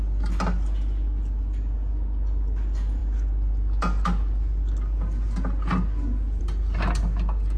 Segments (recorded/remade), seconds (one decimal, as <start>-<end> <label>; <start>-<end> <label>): 0.0-7.6 recorded